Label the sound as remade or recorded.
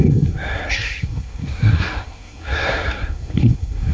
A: remade